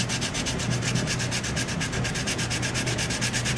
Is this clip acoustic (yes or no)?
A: yes